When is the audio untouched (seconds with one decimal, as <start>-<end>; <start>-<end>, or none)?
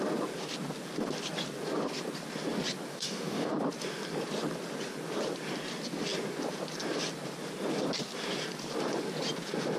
0.0-2.9; 3.5-9.8